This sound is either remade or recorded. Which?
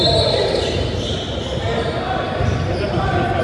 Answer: recorded